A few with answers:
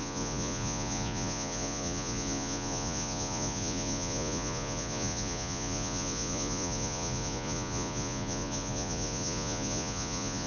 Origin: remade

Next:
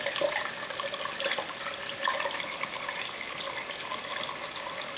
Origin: recorded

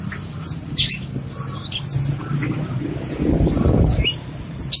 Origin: recorded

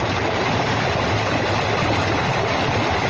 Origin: recorded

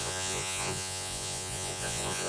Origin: remade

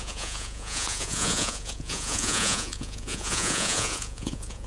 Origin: remade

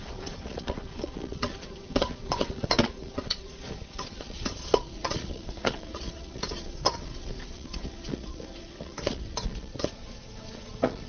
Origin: remade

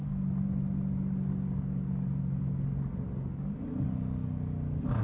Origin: recorded